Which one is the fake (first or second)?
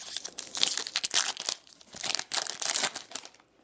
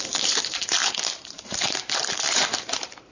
second